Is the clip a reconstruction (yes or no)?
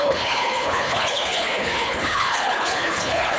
yes